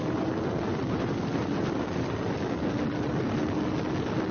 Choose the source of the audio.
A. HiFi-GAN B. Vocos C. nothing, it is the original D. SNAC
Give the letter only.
C